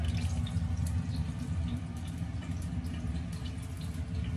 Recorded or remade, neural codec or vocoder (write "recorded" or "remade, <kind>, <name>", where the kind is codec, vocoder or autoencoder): recorded